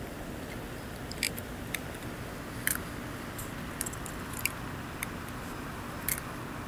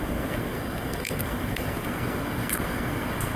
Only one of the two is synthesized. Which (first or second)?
second